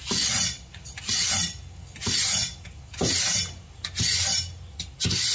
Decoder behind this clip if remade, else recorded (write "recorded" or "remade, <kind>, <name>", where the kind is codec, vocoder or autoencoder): recorded